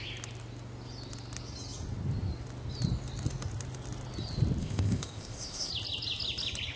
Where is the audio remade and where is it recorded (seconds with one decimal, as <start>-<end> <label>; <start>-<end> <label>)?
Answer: 0.0-4.6 recorded; 4.6-5.7 remade; 5.7-6.8 recorded